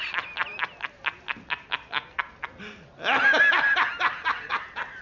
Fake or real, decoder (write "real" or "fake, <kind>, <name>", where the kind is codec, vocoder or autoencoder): real